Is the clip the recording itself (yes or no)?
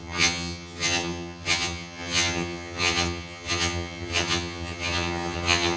no